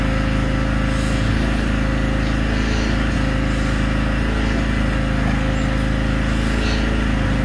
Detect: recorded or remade recorded